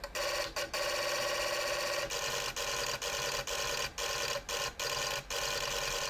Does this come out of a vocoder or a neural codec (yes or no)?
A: no